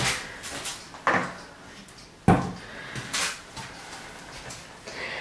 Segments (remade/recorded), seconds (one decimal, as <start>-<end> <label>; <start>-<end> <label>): 0.0-5.2 recorded